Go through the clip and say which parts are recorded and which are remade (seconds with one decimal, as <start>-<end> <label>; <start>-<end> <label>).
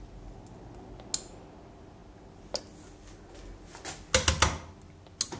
0.0-5.4 recorded